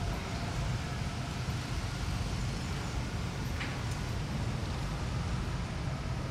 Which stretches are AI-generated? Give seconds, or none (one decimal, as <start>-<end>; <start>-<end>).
none